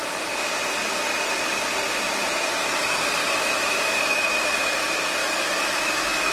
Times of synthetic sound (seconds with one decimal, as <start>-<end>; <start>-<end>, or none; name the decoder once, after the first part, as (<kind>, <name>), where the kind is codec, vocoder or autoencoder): 3.2-4.7 (autoencoder, DAC-VAE); 5.2-6.3

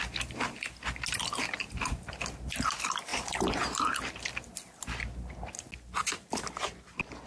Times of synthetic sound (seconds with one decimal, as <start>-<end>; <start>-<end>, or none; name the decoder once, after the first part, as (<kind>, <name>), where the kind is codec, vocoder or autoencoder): none